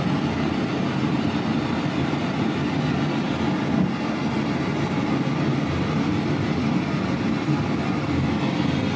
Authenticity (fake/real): real